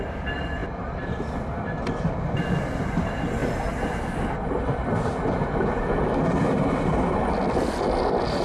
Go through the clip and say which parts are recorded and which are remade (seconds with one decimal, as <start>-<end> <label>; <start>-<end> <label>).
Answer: 0.0-8.4 recorded

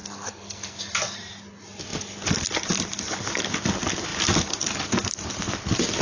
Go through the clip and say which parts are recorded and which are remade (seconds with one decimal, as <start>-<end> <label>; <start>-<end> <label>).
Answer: 0.0-0.8 remade; 0.8-6.0 recorded

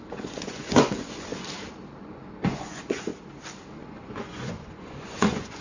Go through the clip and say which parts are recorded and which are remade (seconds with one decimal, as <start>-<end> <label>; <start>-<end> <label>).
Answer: 0.0-1.3 remade; 1.3-2.0 recorded; 2.0-3.1 remade; 3.1-3.7 recorded; 3.7-5.6 remade

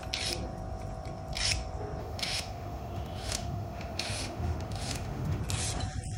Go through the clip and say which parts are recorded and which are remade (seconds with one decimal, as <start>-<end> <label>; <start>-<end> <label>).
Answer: 0.0-2.0 recorded; 2.0-5.4 remade; 5.4-6.2 recorded

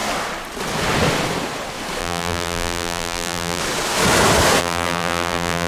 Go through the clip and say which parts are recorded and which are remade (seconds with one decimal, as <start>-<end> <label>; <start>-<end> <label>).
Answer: 0.0-2.0 recorded; 2.0-3.6 remade; 3.6-4.6 recorded; 4.6-5.7 remade

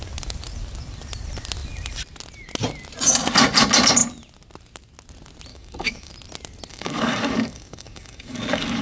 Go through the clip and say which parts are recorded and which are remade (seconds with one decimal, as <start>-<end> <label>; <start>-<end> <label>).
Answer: 0.0-5.5 recorded; 5.5-6.1 remade; 6.1-6.7 recorded; 6.7-8.8 remade

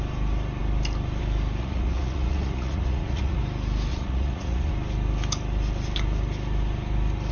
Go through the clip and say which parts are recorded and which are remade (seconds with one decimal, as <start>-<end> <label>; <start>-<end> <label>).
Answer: 0.0-1.6 recorded; 1.6-3.4 remade; 3.4-3.9 recorded; 3.9-4.7 remade; 4.7-7.3 recorded